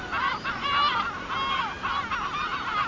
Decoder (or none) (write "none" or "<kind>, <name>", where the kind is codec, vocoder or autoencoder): none